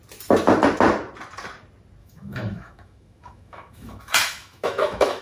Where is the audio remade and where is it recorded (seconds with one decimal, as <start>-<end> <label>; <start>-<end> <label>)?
0.0-2.0 recorded; 2.0-5.2 remade